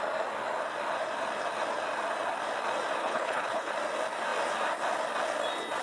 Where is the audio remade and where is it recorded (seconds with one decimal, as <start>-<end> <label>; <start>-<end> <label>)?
0.0-3.0 recorded; 3.0-3.7 remade; 3.7-5.8 recorded